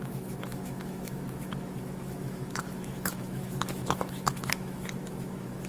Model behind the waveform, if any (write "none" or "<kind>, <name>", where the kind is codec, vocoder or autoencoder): autoencoder, DAC-VAE